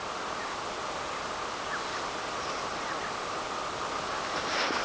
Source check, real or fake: real